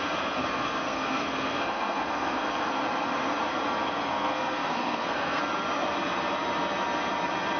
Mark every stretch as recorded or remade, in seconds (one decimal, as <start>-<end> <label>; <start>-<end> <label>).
0.0-0.4 recorded; 0.4-2.7 remade; 2.7-4.1 recorded; 4.1-5.4 remade; 5.4-7.6 recorded

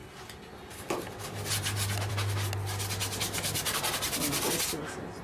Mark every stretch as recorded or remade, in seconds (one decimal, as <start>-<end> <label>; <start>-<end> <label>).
0.0-5.2 recorded

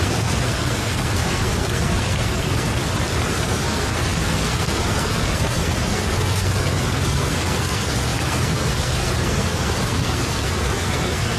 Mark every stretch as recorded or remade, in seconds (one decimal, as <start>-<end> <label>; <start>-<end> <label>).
0.0-2.8 remade; 2.8-3.3 recorded; 3.3-11.4 remade

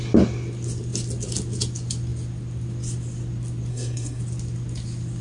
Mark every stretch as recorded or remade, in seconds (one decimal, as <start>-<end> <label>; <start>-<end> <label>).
0.0-3.7 recorded; 3.7-4.2 remade; 4.2-5.2 recorded